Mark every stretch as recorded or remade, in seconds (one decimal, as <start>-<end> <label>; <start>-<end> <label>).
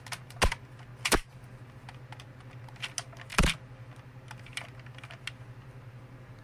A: 0.0-6.4 recorded